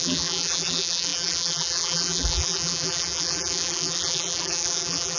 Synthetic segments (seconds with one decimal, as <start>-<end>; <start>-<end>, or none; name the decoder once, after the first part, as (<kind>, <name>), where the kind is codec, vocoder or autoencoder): 0.0-5.2 (vocoder, BigVGAN v2)